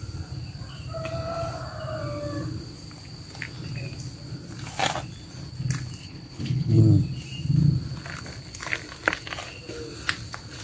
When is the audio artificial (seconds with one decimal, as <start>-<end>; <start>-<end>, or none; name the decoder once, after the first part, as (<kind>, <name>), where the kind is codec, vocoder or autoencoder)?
6.0-6.8 (codec, HILCodec)